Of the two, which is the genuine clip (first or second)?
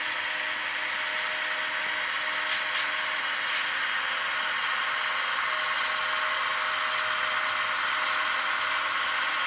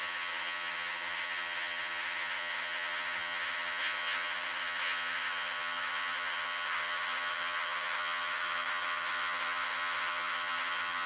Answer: first